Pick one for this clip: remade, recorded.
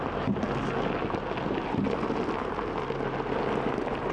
recorded